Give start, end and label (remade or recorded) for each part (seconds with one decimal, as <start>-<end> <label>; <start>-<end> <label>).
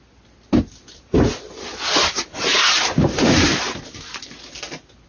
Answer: 0.0-1.1 recorded; 1.1-4.2 remade; 4.2-5.1 recorded